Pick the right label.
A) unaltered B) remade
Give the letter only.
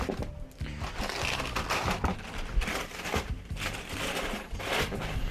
A